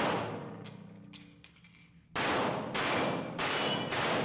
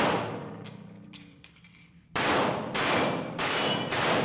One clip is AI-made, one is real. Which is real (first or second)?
first